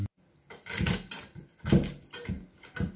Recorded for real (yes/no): yes